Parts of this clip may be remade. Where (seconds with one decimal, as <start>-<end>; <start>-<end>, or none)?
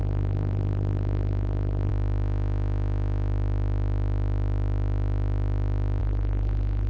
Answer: 0.0-1.9; 6.0-6.9